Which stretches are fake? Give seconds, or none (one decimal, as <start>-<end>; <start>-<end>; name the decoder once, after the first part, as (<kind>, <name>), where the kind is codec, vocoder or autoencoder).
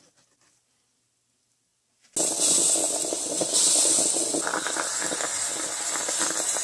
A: 3.2-6.6 (vocoder, BigVGAN v2)